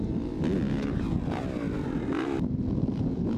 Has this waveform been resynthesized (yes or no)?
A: no